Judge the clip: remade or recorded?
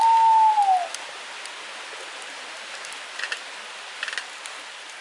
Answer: recorded